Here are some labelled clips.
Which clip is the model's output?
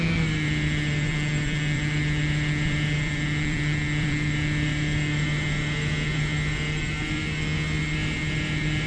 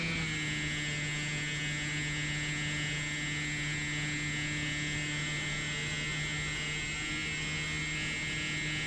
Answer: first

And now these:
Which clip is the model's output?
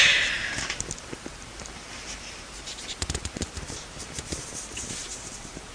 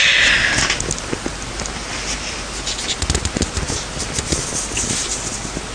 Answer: first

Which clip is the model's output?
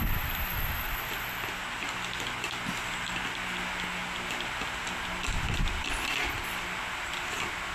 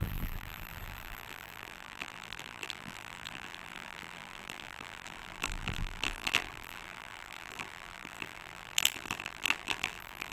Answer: second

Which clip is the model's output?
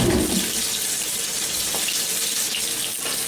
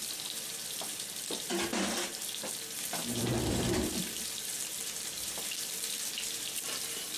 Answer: second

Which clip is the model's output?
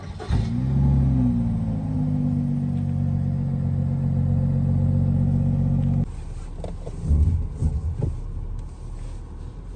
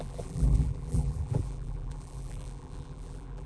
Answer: second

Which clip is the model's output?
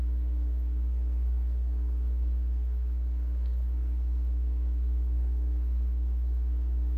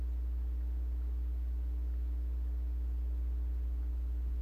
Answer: first